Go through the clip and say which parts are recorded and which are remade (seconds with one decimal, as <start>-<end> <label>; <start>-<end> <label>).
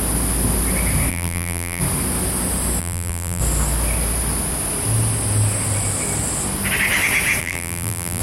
0.0-1.1 recorded; 1.1-1.8 remade; 1.8-2.8 recorded; 2.8-3.4 remade; 3.4-7.4 recorded; 7.4-8.2 remade